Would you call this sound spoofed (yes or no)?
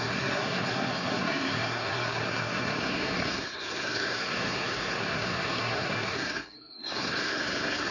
yes